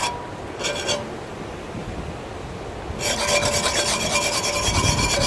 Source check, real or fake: real